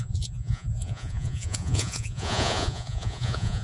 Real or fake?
fake